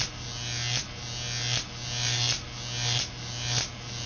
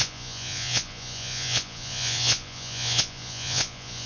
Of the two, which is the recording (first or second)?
first